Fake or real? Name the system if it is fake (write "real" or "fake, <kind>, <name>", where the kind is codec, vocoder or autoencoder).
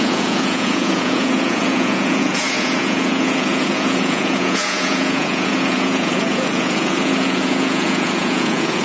fake, vocoder, Vocos